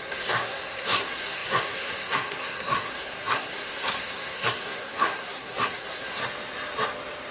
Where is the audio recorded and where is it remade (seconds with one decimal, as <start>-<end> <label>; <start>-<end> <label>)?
0.0-6.2 remade; 6.2-7.3 recorded

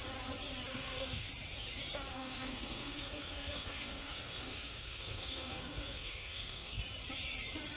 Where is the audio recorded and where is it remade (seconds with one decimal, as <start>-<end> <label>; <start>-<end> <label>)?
0.0-0.7 recorded; 0.7-1.3 remade; 1.3-2.1 recorded; 2.1-6.8 remade; 6.8-7.8 recorded

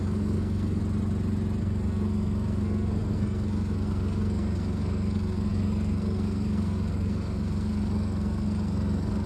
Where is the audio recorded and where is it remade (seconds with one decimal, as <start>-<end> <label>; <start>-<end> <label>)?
0.0-0.8 remade; 0.8-1.6 recorded; 1.6-9.3 remade